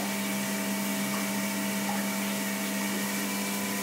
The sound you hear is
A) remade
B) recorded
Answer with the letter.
B